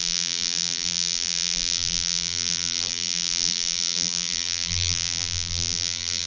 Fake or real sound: fake